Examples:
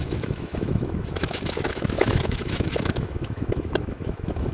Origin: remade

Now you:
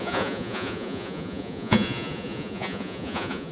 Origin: remade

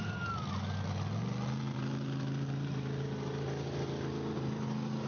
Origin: recorded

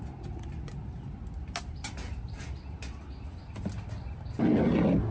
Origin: recorded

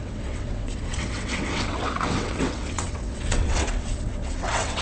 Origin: remade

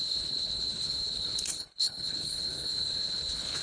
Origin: remade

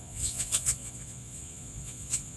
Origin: remade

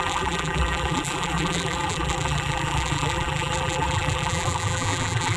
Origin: remade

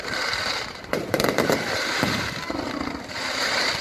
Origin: remade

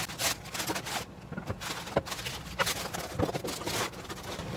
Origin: recorded